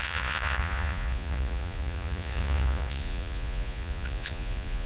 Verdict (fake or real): fake